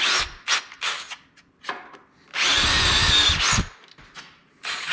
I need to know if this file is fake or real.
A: real